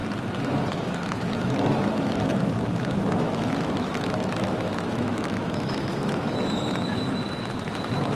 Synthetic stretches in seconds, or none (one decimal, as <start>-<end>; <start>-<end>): 0.7-8.1